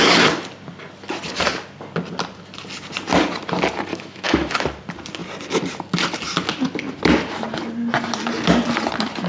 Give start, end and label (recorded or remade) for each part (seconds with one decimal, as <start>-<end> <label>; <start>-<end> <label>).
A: 0.0-3.9 recorded; 3.9-4.5 remade; 4.5-9.3 recorded